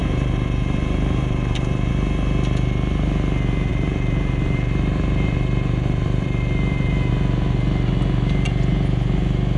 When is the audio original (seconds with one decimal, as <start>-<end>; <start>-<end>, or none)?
1.9-3.7; 7.1-9.6